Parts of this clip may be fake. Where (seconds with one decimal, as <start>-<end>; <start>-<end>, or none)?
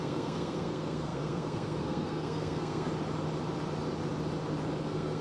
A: 0.0-2.9; 4.8-5.2